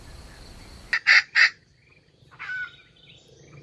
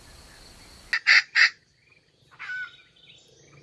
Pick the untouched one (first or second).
second